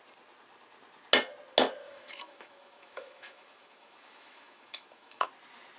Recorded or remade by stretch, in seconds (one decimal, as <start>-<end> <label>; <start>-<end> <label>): 0.0-1.8 recorded; 1.8-5.3 remade; 5.3-5.8 recorded